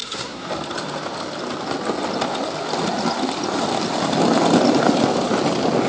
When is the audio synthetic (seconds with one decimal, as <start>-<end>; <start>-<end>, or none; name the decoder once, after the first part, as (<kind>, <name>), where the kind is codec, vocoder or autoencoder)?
0.0-0.5 (codec, SNAC)